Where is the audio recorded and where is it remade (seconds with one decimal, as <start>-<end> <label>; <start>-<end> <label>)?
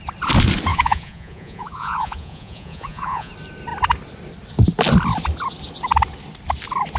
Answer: 0.0-0.7 recorded; 0.7-3.3 remade; 3.3-7.0 recorded